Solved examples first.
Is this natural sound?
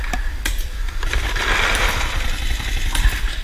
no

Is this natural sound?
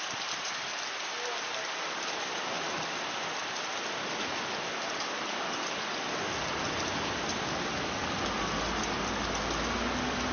yes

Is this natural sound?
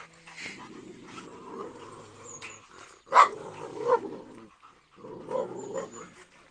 yes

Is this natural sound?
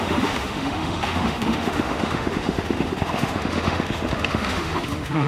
no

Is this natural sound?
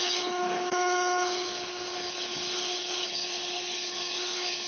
no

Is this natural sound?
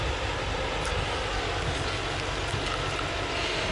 yes